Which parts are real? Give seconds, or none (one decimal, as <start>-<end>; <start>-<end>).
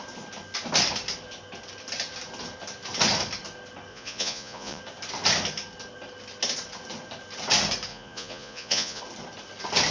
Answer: 0.0-3.9; 4.8-7.9; 9.0-9.9